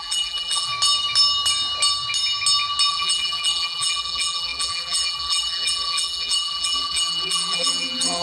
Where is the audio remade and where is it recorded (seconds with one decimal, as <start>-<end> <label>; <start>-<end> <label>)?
0.0-0.7 remade; 0.7-2.9 recorded; 2.9-8.2 remade